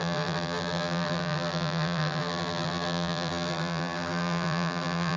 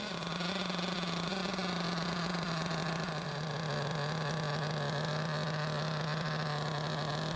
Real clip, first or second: second